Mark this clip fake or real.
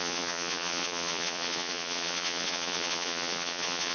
fake